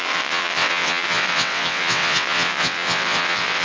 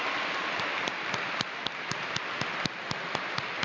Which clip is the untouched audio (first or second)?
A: second